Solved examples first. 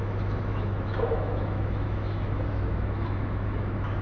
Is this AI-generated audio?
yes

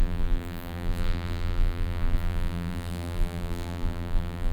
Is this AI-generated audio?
yes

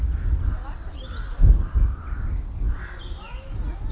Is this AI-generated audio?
no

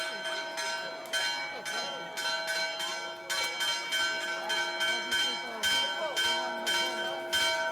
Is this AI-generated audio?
no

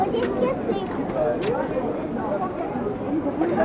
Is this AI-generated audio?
yes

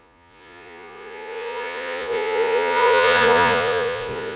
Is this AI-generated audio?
yes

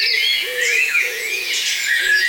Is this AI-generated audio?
yes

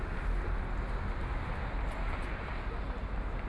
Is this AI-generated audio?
no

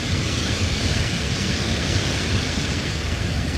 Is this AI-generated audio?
yes